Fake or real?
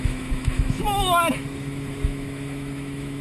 fake